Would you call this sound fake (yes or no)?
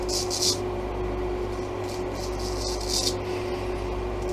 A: no